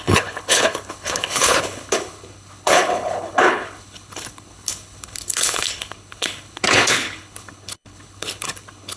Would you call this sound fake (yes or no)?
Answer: yes